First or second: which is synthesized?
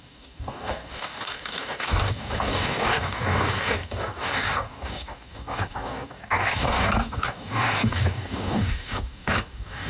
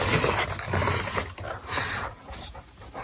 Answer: first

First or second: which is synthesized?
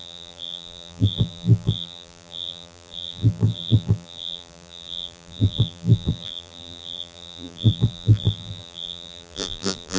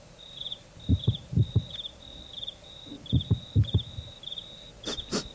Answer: first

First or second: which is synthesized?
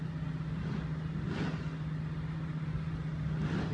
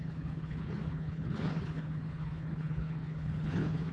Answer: second